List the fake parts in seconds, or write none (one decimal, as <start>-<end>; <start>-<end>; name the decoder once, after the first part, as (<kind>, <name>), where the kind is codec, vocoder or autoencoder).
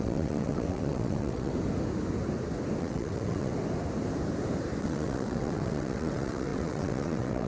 0.0-1.5 (vocoder, WaveNeXt); 2.8-3.5; 4.8-7.5